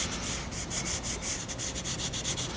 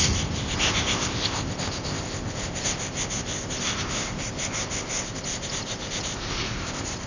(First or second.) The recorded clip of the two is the first